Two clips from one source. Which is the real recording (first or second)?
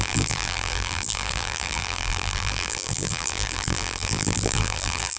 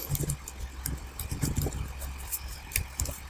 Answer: second